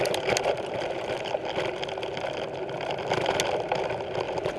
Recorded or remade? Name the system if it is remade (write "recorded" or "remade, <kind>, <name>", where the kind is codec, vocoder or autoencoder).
recorded